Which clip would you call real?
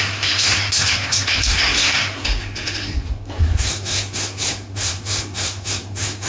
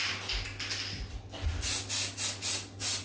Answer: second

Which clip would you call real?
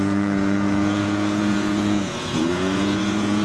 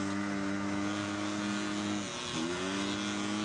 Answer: second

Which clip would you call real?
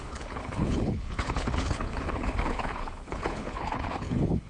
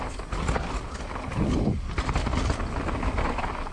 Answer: second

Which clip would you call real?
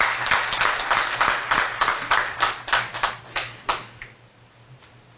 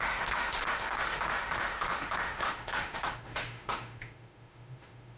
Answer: first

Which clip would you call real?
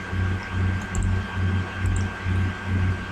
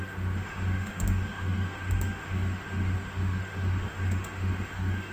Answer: first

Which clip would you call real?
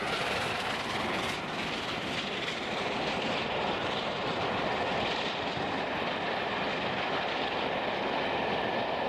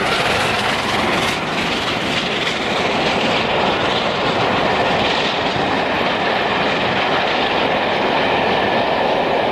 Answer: second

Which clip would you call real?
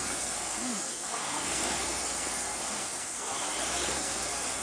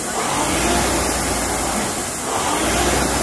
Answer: second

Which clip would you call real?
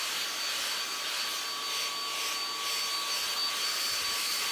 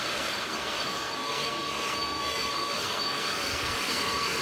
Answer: first